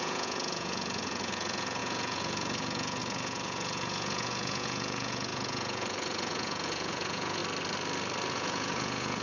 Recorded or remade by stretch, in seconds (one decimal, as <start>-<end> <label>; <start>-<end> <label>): 0.0-7.4 remade; 7.4-8.3 recorded; 8.3-9.2 remade